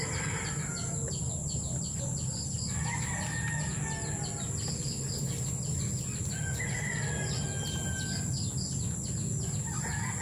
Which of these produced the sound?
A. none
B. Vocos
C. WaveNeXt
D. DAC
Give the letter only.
A